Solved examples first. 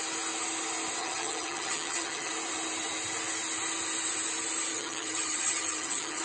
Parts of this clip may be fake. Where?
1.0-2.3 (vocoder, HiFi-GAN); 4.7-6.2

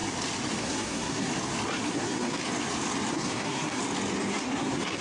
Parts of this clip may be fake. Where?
0.6-1.3 (codec, SNAC); 1.9-2.4; 3.1-3.8; 4.3-5.0

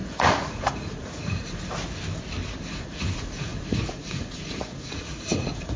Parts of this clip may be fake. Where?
0.0-1.8 (vocoder, Vocos); 2.6-5.8

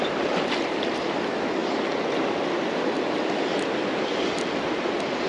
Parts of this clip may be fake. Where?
none

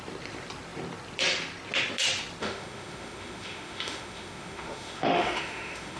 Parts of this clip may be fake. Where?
2.4-6.0 (autoencoder, DAC-VAE)

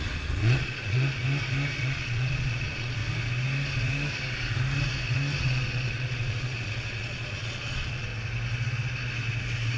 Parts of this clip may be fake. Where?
0.0-1.2 (vocoder, Vocos); 1.8-3.0; 5.4-8.1

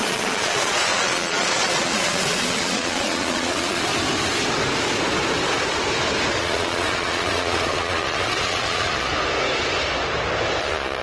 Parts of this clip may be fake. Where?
0.0-3.9 (vocoder, Vocos); 6.4-9.1; 10.6-11.0

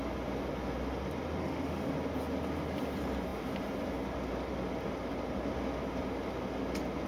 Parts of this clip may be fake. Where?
1.4-1.9 (autoencoder, DAC-VAE)